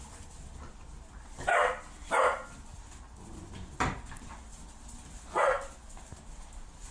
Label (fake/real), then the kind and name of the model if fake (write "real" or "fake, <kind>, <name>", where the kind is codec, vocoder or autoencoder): real